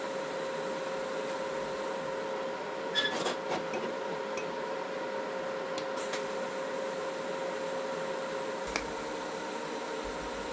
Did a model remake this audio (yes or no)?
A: no